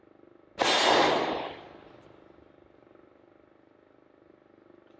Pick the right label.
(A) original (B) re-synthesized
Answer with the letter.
A